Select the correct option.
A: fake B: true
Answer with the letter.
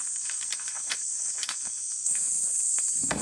A